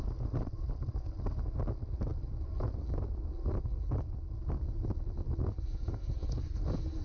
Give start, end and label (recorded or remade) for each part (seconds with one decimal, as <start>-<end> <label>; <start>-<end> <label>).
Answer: 0.0-7.0 recorded